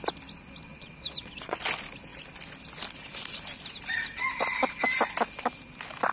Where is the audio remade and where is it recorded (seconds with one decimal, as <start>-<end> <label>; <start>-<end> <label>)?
0.0-0.7 recorded; 0.7-1.6 remade; 1.6-6.1 recorded